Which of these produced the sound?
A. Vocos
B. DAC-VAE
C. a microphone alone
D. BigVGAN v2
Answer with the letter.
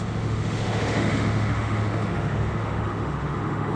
B